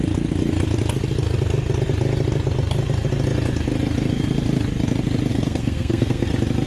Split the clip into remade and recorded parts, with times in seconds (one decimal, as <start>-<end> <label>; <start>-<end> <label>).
0.0-5.3 recorded; 5.3-6.3 remade; 6.3-6.7 recorded